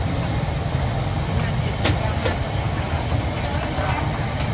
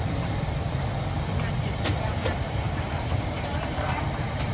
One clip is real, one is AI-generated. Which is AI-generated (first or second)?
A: second